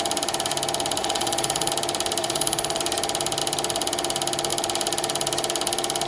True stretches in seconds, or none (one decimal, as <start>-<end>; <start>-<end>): 0.0-1.0; 1.7-2.2; 2.8-6.1